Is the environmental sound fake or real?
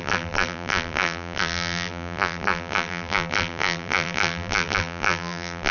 fake